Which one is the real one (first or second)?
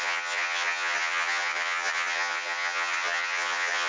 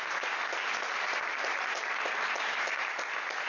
second